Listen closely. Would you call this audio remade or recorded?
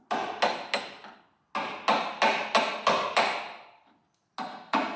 recorded